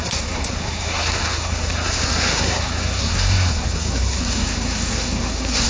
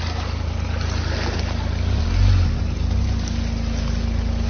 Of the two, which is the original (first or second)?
second